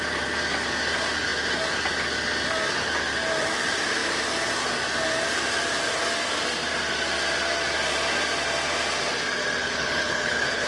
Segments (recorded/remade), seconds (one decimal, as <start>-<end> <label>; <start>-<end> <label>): 0.0-9.6 recorded; 9.6-10.7 remade